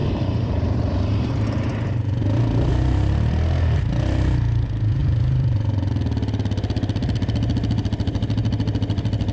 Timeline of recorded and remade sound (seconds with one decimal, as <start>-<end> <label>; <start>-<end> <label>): 0.0-2.7 remade; 2.7-5.0 recorded; 5.0-5.9 remade; 5.9-9.3 recorded